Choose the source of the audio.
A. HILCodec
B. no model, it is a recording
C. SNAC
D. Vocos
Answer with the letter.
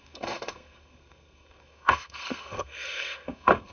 C